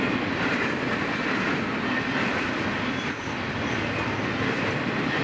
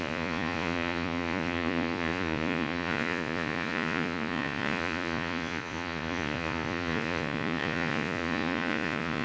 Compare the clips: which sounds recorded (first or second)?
first